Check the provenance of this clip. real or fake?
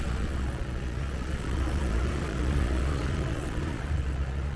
fake